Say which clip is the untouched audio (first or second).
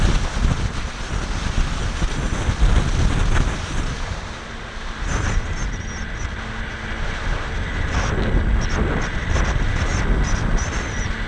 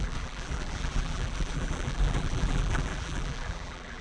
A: first